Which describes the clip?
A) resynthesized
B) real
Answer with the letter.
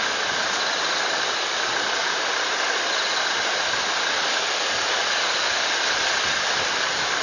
B